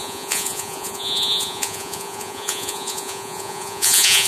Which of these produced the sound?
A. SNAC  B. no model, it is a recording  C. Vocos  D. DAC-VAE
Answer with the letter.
C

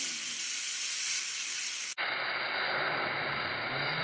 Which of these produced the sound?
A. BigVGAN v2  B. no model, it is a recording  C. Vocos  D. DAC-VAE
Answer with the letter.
B